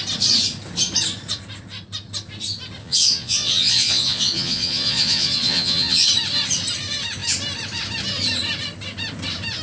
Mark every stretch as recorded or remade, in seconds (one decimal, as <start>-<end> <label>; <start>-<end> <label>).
0.0-2.8 recorded; 2.8-6.1 remade; 6.1-9.6 recorded